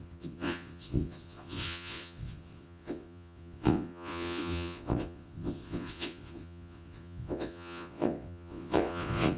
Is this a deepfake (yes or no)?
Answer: yes